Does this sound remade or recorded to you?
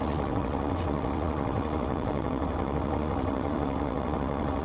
remade